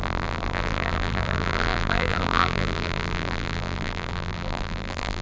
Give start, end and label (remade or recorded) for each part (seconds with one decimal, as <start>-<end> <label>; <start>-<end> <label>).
0.0-5.2 remade